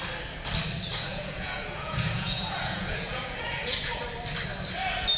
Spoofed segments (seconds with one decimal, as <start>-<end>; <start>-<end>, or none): 0.9-4.0